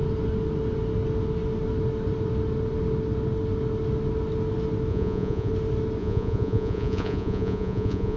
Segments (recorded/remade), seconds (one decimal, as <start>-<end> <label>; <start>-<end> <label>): 0.0-4.9 recorded; 4.9-5.5 remade; 5.5-6.0 recorded; 6.0-8.2 remade